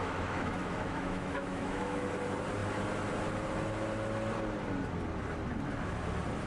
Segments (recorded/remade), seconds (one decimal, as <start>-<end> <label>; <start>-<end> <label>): 0.0-2.1 remade; 2.1-6.5 recorded